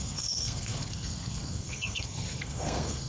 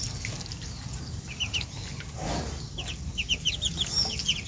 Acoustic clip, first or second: second